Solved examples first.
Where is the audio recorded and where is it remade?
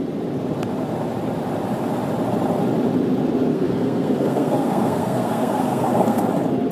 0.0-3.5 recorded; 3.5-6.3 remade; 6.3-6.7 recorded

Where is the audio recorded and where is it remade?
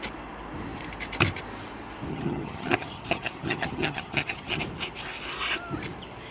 0.0-2.1 recorded; 2.1-4.6 remade; 4.6-6.3 recorded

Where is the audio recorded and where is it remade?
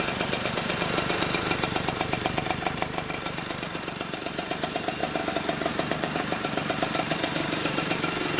0.0-5.0 remade; 5.0-5.7 recorded; 5.7-8.4 remade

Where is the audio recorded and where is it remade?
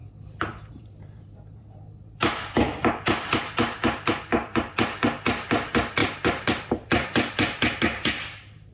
0.0-0.7 recorded; 0.7-8.7 remade